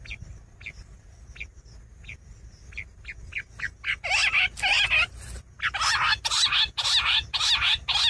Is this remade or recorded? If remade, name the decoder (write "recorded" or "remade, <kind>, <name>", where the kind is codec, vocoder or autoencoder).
recorded